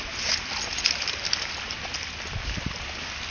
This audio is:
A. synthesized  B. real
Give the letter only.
B